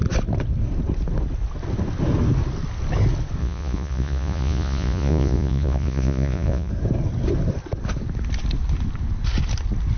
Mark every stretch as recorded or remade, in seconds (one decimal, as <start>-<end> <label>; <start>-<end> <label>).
0.0-3.4 recorded; 3.4-6.7 remade; 6.7-10.0 recorded